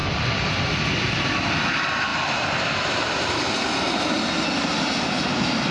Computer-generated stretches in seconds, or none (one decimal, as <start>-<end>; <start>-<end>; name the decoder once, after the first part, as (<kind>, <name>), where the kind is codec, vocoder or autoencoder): 2.1-3.7 (vocoder, BigVGAN v2)